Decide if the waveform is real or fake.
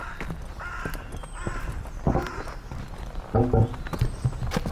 real